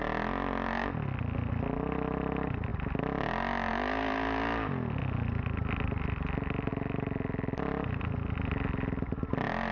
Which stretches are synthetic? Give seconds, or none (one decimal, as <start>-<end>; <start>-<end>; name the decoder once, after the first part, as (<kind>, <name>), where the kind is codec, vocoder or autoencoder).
none